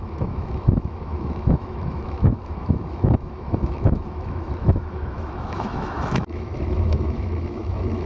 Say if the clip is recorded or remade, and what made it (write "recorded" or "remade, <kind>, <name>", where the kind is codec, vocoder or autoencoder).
remade, autoencoder, DAC-VAE